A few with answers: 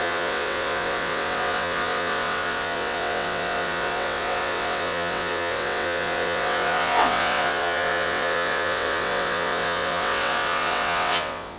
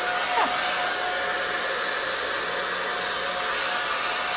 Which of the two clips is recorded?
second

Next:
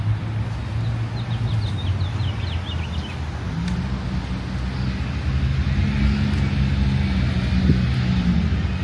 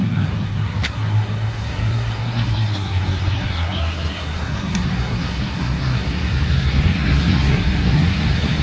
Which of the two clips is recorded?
first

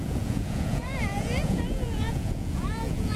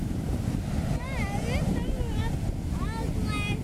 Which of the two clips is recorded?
second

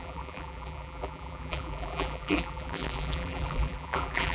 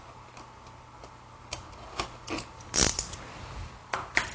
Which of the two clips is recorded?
second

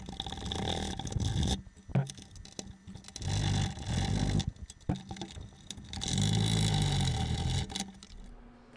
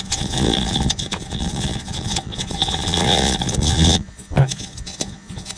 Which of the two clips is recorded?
first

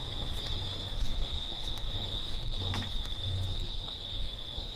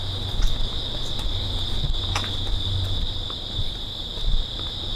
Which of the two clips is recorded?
second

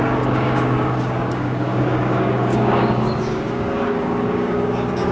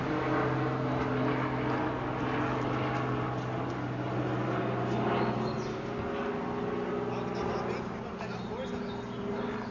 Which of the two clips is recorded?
second